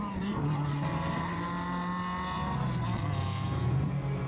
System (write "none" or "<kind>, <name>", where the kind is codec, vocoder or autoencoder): none